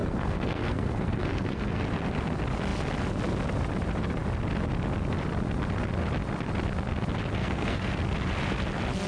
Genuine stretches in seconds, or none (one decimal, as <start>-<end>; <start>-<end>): 1.8-7.4; 7.9-9.1